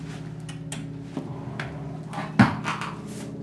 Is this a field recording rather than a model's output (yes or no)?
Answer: yes